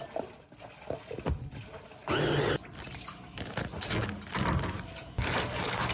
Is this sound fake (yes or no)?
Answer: no